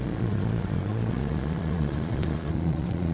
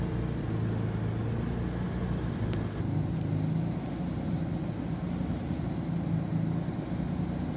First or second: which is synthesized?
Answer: first